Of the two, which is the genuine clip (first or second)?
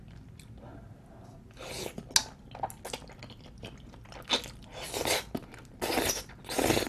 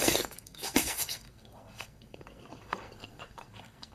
first